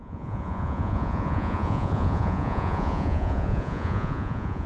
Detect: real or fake fake